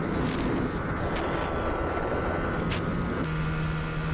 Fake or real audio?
real